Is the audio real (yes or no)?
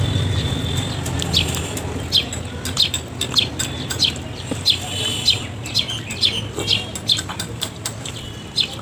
yes